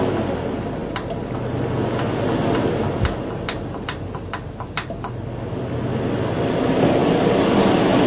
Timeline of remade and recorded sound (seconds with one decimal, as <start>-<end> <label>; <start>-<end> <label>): 0.0-8.1 recorded